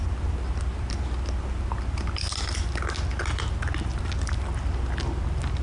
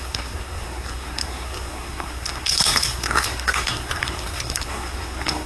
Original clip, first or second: first